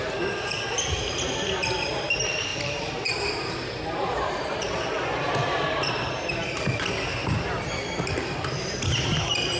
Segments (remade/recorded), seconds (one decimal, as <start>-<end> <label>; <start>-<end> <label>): 0.0-2.5 recorded; 2.5-6.7 remade; 6.7-7.2 recorded; 7.2-8.8 remade; 8.8-9.6 recorded